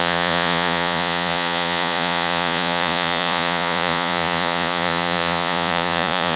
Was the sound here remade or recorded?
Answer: remade